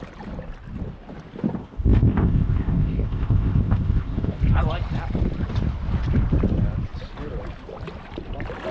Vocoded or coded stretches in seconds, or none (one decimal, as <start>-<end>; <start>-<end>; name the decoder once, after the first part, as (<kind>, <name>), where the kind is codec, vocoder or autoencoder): 1.6-4.4 (codec, ZipCodec)